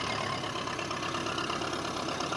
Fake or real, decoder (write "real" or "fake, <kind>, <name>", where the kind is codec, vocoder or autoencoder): real